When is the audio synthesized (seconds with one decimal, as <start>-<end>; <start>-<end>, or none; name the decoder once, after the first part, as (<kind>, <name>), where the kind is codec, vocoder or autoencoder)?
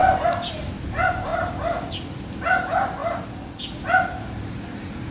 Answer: none